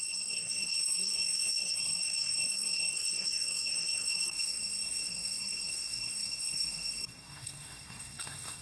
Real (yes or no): no